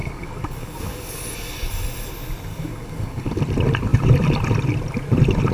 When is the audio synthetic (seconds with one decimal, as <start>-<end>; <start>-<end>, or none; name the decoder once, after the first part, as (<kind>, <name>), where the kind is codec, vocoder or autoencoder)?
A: 0.0-1.2 (codec, DAC); 2.5-3.4